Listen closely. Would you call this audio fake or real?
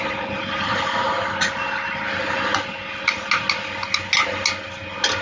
real